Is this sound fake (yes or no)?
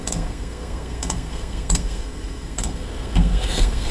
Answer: yes